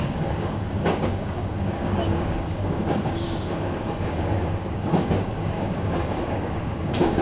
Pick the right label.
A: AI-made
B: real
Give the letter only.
A